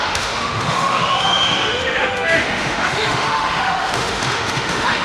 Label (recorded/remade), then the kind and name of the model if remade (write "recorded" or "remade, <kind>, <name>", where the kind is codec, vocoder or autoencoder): remade, autoencoder, DAC-VAE